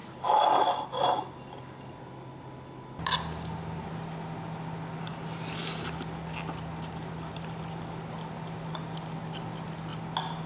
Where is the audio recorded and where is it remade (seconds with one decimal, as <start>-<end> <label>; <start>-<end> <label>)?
0.0-10.5 recorded